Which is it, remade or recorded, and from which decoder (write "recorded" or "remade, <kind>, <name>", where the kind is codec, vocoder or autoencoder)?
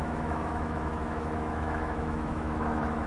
remade, autoencoder, DAC-VAE